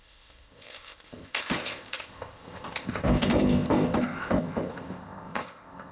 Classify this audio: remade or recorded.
remade